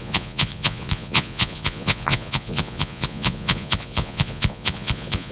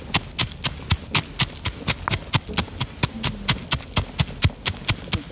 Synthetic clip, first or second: first